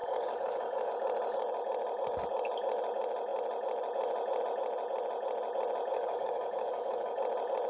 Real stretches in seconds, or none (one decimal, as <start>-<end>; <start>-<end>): 0.9-5.9; 7.2-7.7